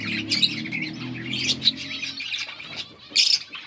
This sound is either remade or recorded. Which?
recorded